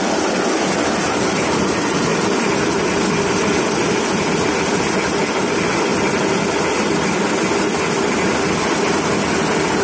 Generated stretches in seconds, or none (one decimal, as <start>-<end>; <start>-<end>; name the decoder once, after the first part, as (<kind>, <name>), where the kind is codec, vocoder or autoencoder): none